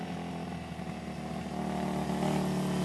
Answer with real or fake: real